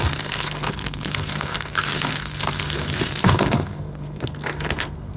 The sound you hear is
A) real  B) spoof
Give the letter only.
B